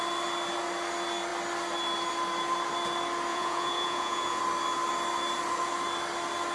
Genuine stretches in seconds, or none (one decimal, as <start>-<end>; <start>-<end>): 0.0-3.3; 4.4-6.5